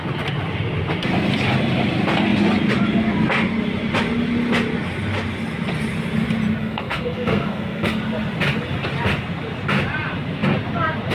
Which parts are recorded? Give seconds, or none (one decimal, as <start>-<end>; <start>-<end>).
0.0-6.6; 8.0-11.1